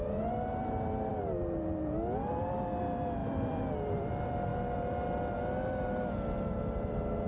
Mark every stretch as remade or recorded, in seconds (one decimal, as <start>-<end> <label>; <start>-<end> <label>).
0.0-3.2 recorded; 3.2-4.1 remade; 4.1-7.3 recorded